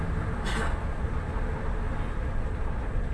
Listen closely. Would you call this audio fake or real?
real